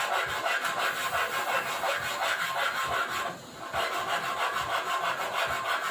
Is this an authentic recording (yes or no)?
yes